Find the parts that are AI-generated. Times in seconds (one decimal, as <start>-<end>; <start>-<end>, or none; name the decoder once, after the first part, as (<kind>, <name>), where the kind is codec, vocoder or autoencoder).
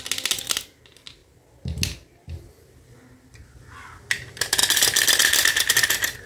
none